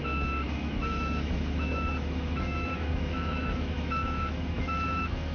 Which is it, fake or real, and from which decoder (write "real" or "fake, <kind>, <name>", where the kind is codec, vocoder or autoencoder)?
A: fake, autoencoder, DAC-VAE